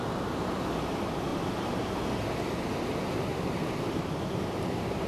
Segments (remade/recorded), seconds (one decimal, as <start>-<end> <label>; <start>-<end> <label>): 0.0-1.3 recorded; 1.3-1.9 remade; 1.9-3.3 recorded; 3.3-4.3 remade; 4.3-5.1 recorded